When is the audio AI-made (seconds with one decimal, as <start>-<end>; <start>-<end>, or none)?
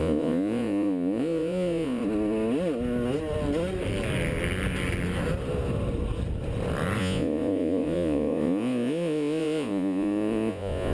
0.0-2.0; 7.0-10.9